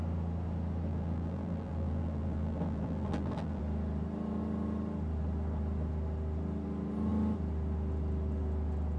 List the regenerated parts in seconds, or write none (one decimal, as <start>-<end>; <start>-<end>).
0.9-3.6